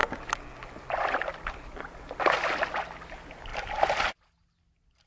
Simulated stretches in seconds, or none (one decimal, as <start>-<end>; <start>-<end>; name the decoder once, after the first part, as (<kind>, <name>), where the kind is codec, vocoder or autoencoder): none